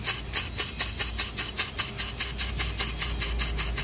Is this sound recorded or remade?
recorded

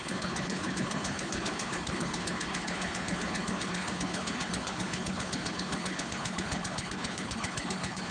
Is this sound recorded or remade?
remade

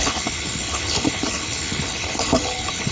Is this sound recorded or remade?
remade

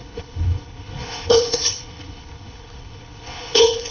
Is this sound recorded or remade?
remade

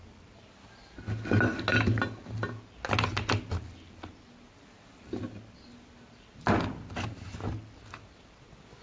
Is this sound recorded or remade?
recorded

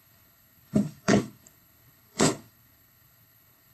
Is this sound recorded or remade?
remade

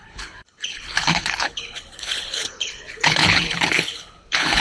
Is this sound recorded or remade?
remade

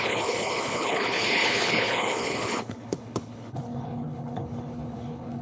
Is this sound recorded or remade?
remade